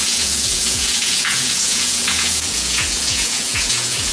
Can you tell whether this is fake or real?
fake